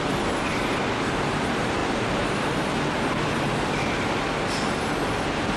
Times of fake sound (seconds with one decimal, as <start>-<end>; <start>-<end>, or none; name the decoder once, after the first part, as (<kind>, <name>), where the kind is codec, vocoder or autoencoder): 0.0-1.8 (vocoder, BigVGAN v2)